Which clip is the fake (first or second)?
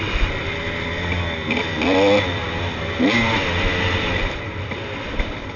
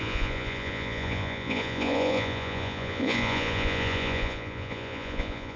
second